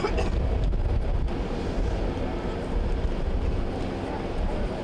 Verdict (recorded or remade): recorded